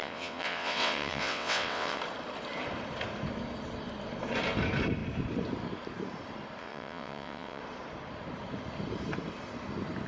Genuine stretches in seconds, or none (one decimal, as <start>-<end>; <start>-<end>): 2.0-6.6; 7.6-10.1